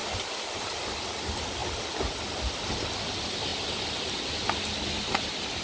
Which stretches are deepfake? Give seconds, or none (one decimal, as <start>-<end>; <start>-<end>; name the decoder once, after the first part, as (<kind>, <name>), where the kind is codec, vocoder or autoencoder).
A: none